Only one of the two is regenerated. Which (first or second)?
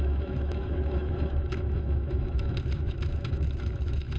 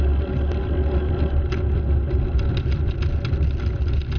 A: first